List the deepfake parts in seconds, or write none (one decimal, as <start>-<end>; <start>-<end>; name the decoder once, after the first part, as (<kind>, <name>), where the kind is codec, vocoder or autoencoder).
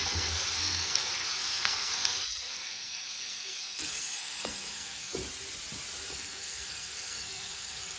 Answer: 0.0-5.2 (codec, SNAC); 6.1-8.0